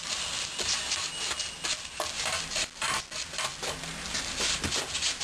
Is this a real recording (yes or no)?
yes